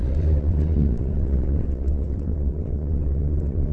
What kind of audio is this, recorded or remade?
remade